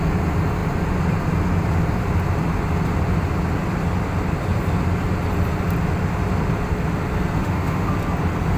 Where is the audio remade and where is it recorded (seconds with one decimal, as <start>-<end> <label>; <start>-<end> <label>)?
0.0-7.4 recorded; 7.4-7.9 remade; 7.9-8.6 recorded